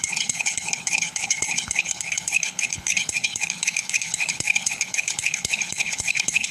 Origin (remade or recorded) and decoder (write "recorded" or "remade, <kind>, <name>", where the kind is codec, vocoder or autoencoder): remade, codec, HILCodec